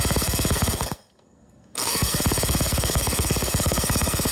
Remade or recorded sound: remade